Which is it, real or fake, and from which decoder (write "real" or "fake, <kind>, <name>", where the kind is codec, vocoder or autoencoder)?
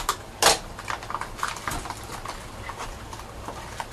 real